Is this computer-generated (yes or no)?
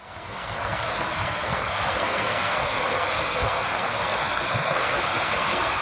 yes